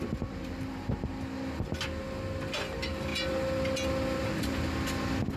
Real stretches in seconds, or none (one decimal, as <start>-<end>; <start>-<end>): 0.0-5.4